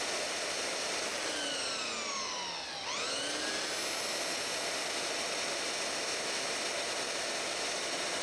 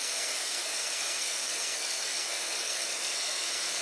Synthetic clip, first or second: second